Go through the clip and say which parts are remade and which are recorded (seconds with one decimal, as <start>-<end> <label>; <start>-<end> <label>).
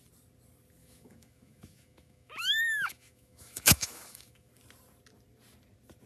0.0-0.8 recorded; 0.8-4.5 remade; 4.5-6.1 recorded